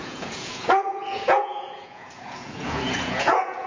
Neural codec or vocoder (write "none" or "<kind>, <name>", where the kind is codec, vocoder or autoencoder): vocoder, Vocos